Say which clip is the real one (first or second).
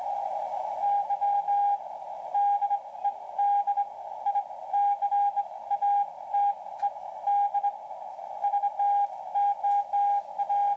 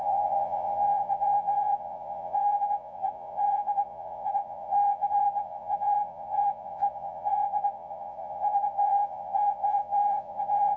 first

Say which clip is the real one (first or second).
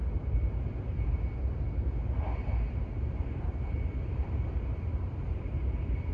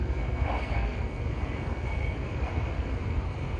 first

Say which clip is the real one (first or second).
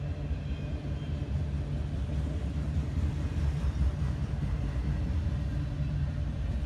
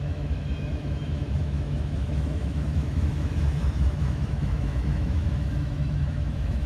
first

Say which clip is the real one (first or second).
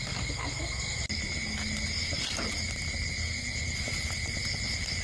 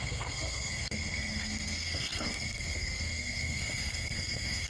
first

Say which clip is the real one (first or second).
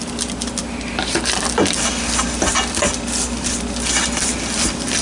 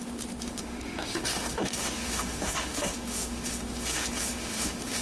first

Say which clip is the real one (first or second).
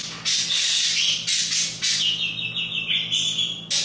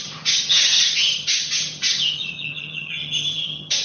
first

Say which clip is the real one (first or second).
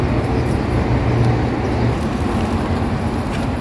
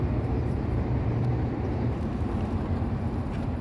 first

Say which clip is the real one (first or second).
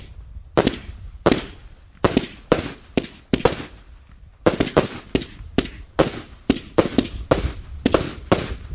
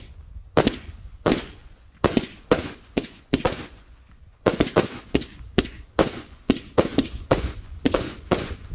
first